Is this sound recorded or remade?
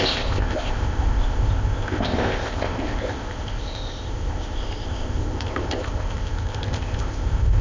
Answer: remade